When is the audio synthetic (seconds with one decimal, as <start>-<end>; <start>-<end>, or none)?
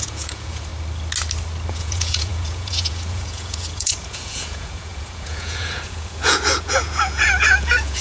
0.0-0.7; 1.7-8.0